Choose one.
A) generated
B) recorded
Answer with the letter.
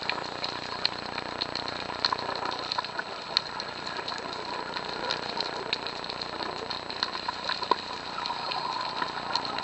B